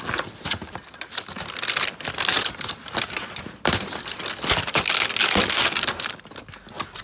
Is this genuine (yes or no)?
yes